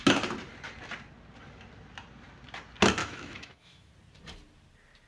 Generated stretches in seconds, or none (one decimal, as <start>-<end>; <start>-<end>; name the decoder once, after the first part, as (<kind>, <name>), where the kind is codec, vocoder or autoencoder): 3.0-3.9 (autoencoder, DAC-VAE)